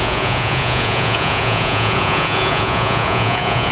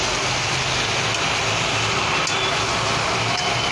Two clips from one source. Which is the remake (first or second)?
first